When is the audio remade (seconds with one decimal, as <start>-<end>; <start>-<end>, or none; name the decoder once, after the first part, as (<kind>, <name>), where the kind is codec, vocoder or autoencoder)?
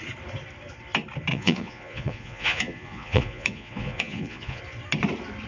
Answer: 1.3-4.6 (vocoder, Vocos)